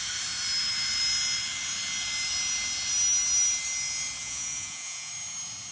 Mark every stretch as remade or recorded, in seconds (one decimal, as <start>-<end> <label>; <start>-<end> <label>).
0.0-4.2 recorded; 4.2-5.1 remade; 5.1-5.7 recorded